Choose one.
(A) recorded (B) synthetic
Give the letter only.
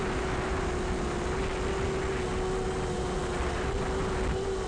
A